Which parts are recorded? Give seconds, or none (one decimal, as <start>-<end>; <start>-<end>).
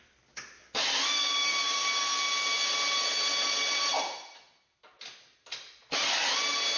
0.0-1.2; 1.8-6.8